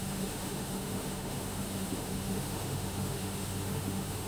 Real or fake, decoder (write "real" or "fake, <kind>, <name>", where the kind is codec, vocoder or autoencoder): fake, autoencoder, DAC-VAE